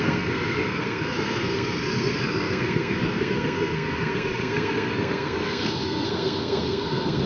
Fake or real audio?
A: fake